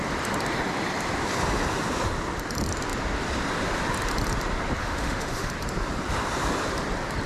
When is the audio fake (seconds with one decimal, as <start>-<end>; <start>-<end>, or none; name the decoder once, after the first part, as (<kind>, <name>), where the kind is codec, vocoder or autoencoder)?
4.8-5.5 (autoencoder, DAC-VAE)

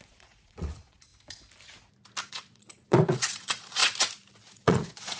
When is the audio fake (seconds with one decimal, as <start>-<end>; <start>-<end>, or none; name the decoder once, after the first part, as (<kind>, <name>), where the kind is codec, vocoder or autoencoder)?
0.0-1.1 (vocoder, Vocos); 2.3-3.8; 4.5-5.2

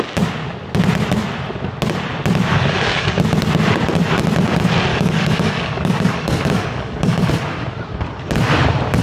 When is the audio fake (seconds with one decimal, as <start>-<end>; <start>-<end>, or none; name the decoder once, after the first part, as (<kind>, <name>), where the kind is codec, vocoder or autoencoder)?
2.5-3.2 (codec, DAC); 4.9-7.3